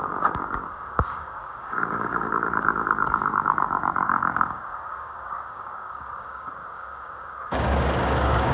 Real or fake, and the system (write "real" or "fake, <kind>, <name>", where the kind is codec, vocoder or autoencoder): fake, codec, DAC